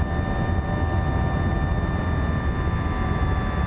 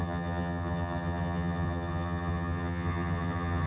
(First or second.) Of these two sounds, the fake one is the second